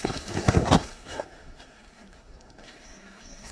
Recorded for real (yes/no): no